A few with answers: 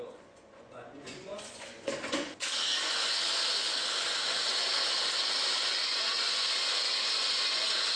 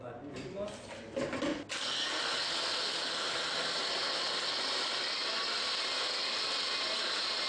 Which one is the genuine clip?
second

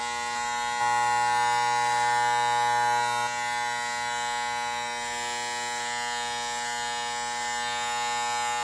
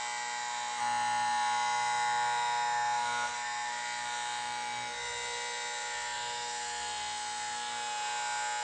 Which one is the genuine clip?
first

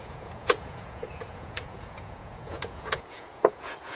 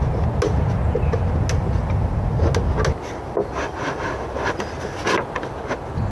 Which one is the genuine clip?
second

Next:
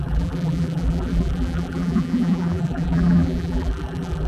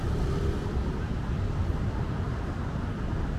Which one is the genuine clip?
second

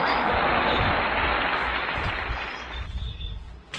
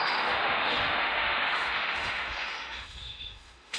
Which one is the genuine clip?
first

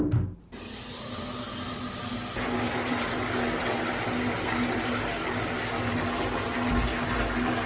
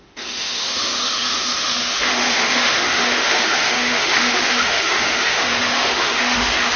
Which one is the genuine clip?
first